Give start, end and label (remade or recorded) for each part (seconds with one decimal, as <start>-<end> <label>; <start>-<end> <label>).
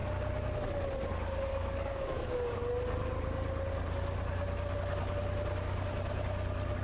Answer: 0.0-1.5 recorded; 1.5-2.6 remade; 2.6-6.8 recorded